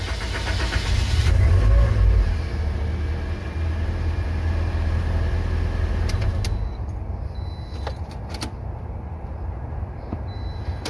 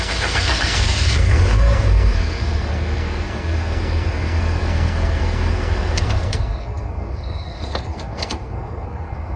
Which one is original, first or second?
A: first